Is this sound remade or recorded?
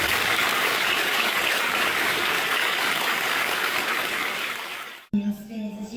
remade